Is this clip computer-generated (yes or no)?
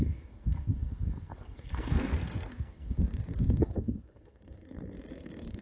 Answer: yes